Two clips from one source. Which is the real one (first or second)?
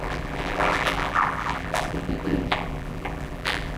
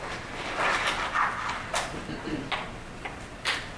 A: second